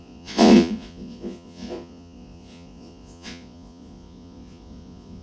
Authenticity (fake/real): fake